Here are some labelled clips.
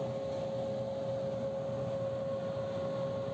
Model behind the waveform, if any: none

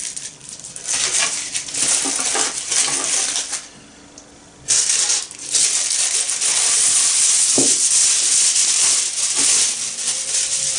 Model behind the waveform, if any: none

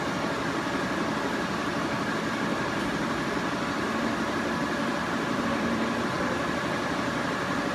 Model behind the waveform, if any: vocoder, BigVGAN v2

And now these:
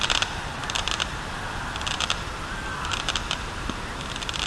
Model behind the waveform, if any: vocoder, BigVGAN v2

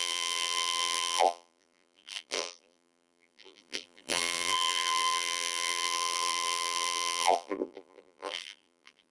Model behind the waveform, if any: vocoder, BigVGAN v2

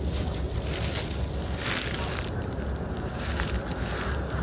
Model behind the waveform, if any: none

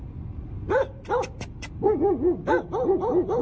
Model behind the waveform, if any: none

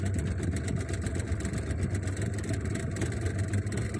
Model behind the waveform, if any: none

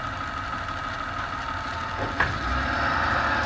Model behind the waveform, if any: none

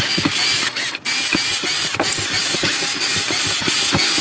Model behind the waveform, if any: none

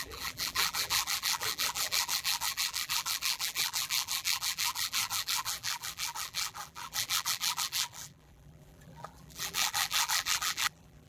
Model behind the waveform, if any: vocoder, BigVGAN v2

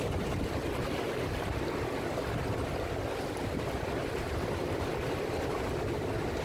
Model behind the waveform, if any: none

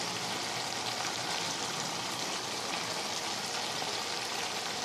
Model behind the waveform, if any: none